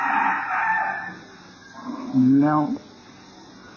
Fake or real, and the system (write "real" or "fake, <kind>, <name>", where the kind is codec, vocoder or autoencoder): real